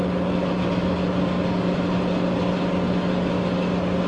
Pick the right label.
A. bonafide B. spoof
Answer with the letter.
A